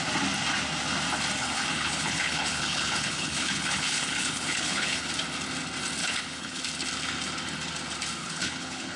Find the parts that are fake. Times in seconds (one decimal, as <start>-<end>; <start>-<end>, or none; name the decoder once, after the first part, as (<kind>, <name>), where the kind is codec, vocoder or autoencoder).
1.4-5.1 (codec, HILCodec); 6.0-6.6; 8.2-9.0